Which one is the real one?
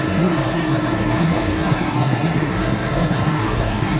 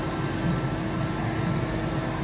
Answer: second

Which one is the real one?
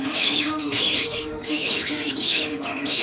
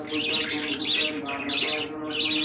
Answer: second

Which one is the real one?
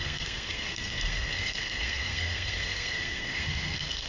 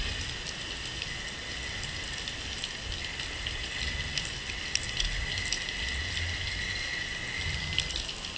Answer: second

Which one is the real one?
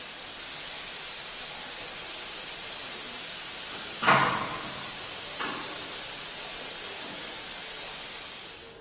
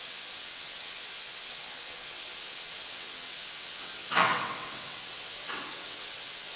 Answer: first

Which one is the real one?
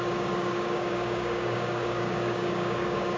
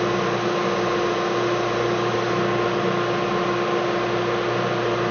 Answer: second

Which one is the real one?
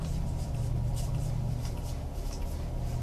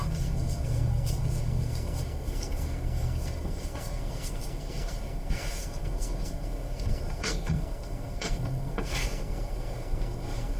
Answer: first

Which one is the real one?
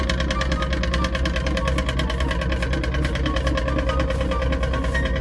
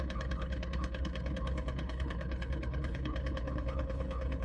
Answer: first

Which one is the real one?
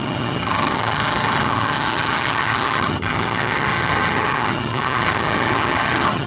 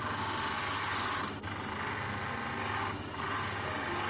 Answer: second